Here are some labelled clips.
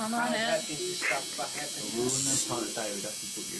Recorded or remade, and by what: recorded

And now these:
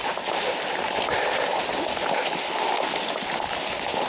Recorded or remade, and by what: recorded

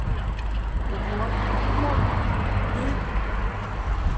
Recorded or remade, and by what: recorded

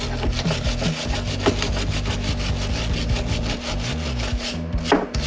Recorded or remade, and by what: recorded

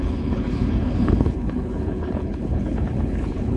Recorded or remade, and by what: remade, codec, HILCodec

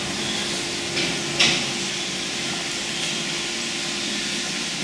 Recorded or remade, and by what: recorded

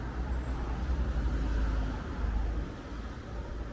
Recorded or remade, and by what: recorded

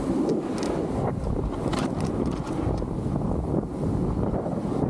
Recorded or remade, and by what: recorded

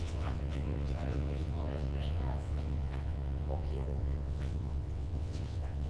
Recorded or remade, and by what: remade, vocoder, WaveNeXt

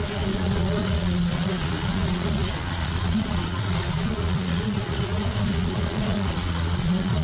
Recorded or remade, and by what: remade, vocoder, Vocos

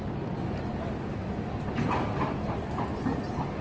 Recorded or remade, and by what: recorded